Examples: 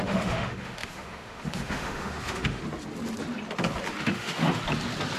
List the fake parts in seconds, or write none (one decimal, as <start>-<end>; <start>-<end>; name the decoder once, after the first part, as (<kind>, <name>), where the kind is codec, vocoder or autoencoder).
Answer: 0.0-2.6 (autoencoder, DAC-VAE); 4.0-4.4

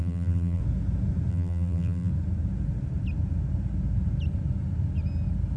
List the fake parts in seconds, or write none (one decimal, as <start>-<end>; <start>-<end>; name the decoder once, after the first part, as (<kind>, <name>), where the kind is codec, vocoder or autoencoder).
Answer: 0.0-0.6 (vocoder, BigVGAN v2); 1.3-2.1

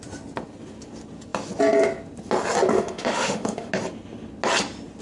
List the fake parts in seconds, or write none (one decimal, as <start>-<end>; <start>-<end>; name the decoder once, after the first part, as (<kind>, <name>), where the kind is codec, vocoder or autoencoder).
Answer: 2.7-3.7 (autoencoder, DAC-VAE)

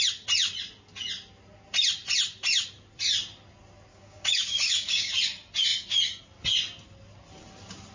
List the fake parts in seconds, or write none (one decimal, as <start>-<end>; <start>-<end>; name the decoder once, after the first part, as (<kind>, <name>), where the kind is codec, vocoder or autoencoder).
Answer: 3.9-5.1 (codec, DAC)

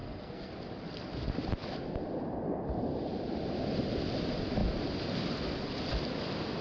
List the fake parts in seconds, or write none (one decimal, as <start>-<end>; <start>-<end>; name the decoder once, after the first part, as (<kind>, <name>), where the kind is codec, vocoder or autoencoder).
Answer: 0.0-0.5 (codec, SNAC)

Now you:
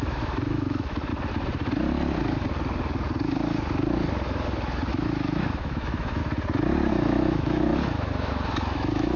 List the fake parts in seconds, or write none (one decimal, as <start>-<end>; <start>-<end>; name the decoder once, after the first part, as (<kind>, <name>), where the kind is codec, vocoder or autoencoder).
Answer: 0.0-1.1 (autoencoder, DAC-VAE); 4.9-6.2; 6.9-9.2

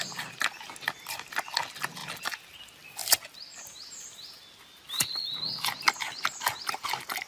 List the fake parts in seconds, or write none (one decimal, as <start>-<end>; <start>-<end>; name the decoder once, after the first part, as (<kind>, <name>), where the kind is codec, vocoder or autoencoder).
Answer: none